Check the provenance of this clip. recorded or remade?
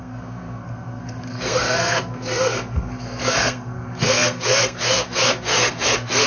remade